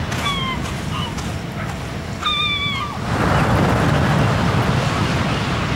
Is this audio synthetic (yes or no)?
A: no